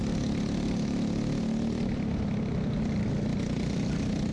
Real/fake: real